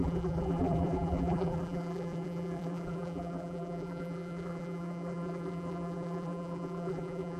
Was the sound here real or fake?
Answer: fake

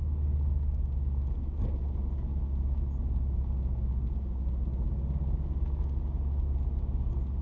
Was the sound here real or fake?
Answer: real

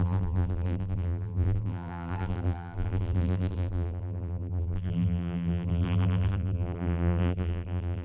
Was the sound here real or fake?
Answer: fake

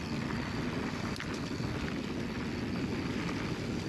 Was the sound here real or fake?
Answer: real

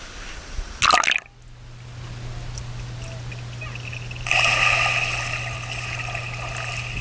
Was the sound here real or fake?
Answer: real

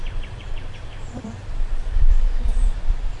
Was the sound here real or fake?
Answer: fake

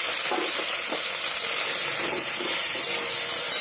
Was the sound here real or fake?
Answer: real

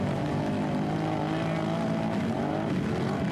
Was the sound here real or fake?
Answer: real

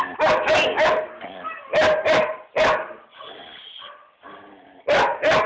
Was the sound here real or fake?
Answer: real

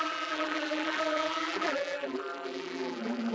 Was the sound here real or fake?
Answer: fake